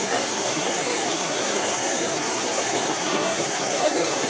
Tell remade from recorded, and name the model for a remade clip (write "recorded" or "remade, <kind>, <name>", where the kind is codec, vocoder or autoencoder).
remade, codec, SNAC